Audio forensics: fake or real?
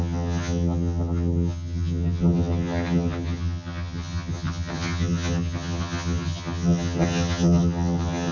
fake